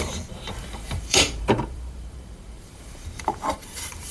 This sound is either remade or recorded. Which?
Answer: remade